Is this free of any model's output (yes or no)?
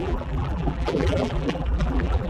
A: no